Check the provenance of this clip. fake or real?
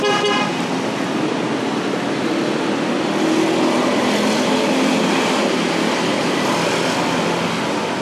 real